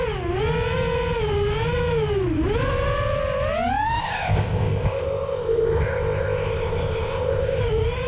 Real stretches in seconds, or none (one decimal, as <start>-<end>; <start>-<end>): 0.0-4.0; 7.6-8.1